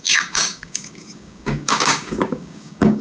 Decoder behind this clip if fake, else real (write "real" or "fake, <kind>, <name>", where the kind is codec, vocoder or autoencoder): fake, codec, DAC